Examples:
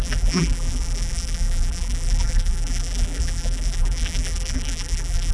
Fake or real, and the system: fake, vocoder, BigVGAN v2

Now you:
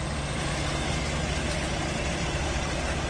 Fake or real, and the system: real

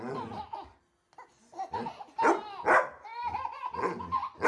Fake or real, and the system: real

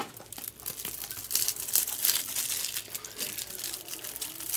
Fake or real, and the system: real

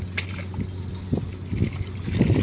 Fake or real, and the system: real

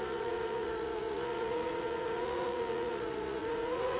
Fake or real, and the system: fake, vocoder, Vocos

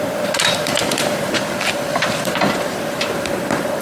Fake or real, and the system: fake, vocoder, BigVGAN v2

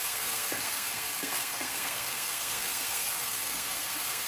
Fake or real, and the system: fake, codec, SNAC